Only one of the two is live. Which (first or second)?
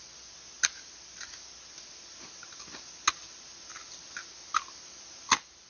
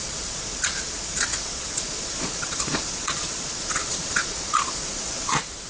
first